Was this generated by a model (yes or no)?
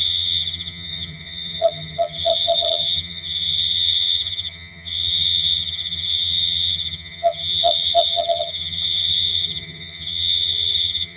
yes